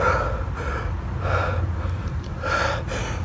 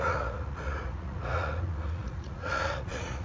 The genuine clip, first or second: first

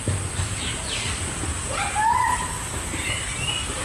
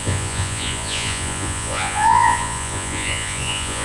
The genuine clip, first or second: first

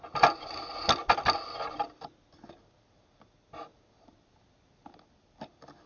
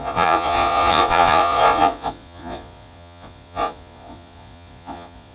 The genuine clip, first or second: first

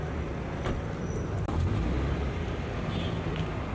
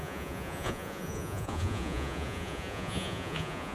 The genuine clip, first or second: first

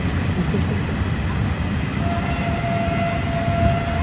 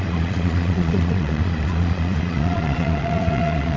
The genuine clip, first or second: first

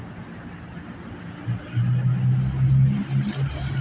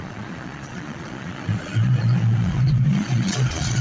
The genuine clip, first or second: first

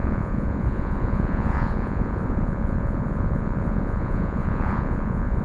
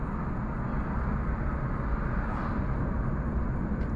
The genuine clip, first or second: second